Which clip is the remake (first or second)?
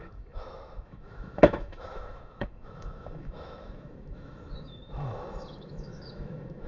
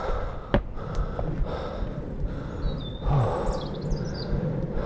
first